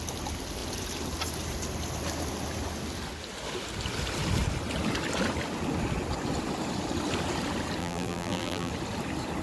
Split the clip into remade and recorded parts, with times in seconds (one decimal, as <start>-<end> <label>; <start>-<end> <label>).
0.0-7.8 recorded; 7.8-8.7 remade; 8.7-9.4 recorded

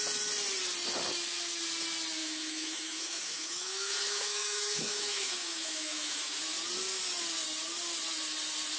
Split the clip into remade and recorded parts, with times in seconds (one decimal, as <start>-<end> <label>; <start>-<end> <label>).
0.0-2.2 recorded; 2.2-6.4 remade; 6.4-8.8 recorded

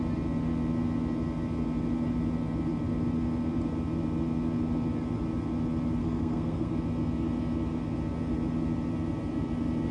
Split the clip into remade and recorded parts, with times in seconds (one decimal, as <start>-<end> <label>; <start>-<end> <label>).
0.0-6.0 recorded; 6.0-6.7 remade; 6.7-9.9 recorded

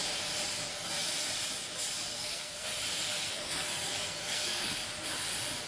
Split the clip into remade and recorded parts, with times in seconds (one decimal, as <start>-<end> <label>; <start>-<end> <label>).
0.0-0.7 recorded; 0.7-1.3 remade; 1.3-2.1 recorded; 2.1-4.7 remade; 4.7-5.7 recorded

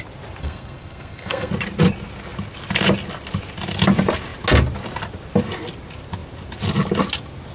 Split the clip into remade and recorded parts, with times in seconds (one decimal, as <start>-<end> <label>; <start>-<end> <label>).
0.0-0.4 recorded; 0.4-1.5 remade; 1.5-7.5 recorded